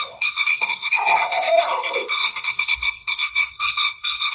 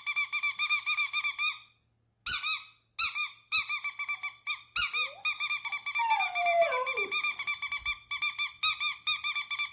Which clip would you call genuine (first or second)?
second